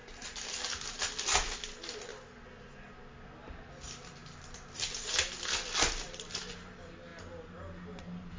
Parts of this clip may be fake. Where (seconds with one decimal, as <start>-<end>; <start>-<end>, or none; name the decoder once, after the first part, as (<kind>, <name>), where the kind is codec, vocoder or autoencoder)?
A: none